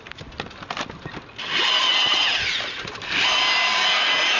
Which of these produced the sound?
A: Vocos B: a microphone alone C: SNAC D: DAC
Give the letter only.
B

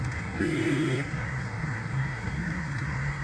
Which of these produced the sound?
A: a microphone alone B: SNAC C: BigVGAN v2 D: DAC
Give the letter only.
B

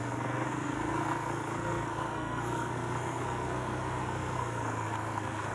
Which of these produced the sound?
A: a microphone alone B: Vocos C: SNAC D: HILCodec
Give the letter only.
C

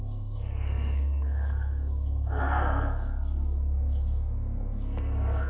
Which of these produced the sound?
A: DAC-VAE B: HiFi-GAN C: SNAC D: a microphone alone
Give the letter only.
C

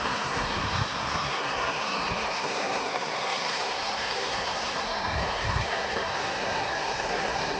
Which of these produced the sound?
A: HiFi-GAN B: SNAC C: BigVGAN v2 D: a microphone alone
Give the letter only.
B